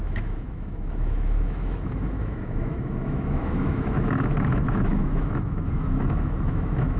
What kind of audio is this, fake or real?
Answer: fake